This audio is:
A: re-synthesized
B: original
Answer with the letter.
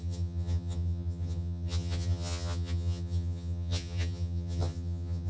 A